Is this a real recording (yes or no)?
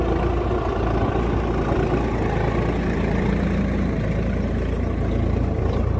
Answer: yes